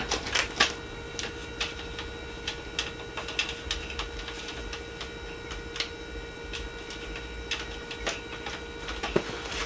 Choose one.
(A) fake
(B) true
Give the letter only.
B